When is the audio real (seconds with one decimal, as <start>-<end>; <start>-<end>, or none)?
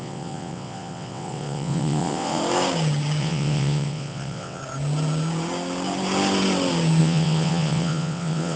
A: 2.4-3.2; 4.6-7.0